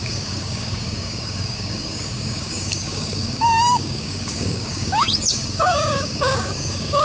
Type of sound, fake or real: fake